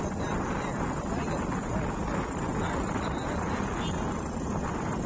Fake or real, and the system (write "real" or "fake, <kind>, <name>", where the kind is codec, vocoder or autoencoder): real